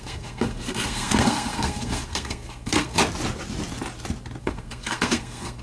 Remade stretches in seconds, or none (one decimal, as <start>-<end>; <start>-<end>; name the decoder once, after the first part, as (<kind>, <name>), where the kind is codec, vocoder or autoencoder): 0.0-3.0 (codec, SNAC); 4.4-5.6